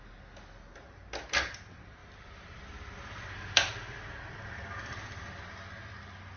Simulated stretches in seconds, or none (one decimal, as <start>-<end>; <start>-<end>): 2.0-5.3